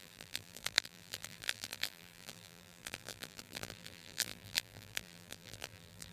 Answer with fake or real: fake